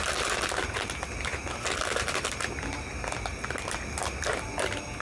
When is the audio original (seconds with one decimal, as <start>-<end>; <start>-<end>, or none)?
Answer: 0.0-5.0